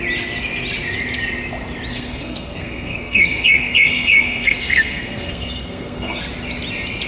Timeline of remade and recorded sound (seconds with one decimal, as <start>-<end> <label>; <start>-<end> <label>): 0.0-1.9 recorded; 1.9-6.2 remade; 6.2-7.1 recorded